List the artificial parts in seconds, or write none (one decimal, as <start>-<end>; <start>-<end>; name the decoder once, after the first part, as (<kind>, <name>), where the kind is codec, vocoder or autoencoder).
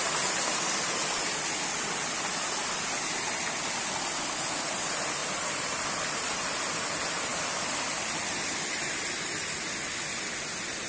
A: none